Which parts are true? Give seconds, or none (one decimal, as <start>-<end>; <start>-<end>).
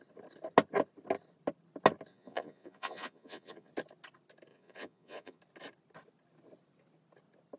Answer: 0.0-2.1; 3.7-4.5; 5.4-7.6